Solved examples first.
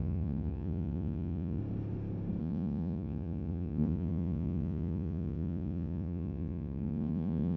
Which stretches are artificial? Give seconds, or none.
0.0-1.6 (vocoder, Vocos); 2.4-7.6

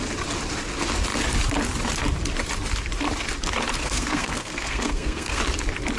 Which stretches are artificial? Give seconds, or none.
3.8-5.4 (codec, SNAC)